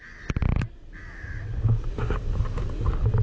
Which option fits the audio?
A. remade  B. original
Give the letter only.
B